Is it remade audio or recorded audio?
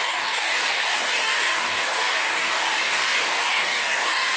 remade